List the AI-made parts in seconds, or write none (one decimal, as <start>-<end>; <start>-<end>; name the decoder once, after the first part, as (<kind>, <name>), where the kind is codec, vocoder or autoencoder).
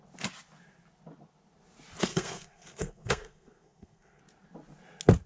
2.1-4.2 (codec, SNAC)